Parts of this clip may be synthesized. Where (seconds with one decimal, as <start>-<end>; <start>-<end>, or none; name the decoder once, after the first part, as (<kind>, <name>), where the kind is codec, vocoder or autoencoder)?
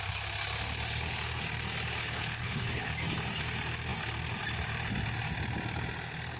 2.0-2.9 (codec, HILCodec)